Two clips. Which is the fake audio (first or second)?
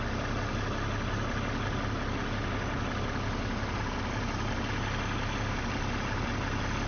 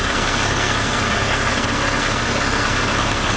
second